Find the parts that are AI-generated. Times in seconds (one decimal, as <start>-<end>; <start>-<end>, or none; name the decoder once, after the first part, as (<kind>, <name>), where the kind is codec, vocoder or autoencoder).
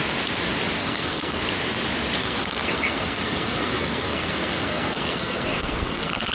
0.8-1.4 (codec, SNAC); 2.2-6.3